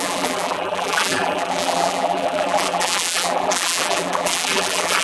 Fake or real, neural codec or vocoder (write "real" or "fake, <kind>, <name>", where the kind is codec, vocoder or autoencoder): fake, vocoder, BigVGAN v2